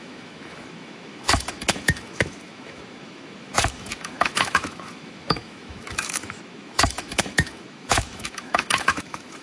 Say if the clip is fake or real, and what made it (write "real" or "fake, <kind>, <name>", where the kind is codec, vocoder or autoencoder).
fake, autoencoder, DAC-VAE